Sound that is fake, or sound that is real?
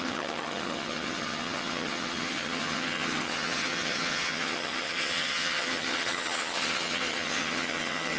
fake